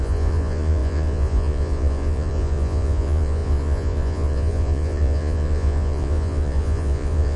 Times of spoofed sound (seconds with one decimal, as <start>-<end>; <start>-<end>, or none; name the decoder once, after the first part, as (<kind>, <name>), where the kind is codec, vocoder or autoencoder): 0.0-7.4 (vocoder, Vocos)